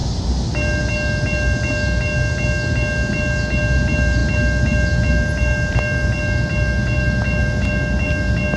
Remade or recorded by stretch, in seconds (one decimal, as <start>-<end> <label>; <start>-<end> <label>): 0.0-8.6 recorded